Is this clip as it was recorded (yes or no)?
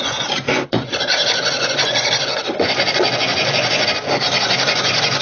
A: no